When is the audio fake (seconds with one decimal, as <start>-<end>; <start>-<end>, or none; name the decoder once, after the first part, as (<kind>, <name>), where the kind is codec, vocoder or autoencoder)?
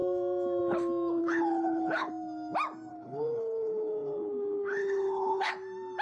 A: 1.2-2.1 (codec, HILCodec); 2.9-5.5